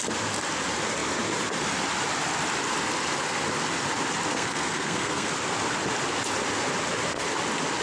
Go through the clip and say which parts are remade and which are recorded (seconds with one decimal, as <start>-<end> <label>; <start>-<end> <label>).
0.0-4.3 recorded; 4.3-5.3 remade; 5.3-7.8 recorded